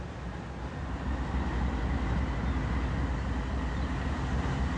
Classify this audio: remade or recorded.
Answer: recorded